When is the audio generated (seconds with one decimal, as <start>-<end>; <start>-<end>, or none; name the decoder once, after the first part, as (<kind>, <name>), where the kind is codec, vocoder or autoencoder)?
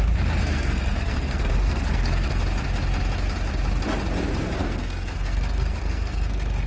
0.4-2.4 (codec, SNAC); 4.6-6.7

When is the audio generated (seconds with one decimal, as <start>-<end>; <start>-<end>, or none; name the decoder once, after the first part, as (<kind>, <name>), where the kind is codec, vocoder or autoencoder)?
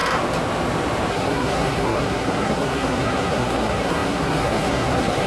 1.1-5.3 (codec, SNAC)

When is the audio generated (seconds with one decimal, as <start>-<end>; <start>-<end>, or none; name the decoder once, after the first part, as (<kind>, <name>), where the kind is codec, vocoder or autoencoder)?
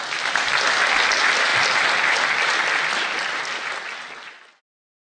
none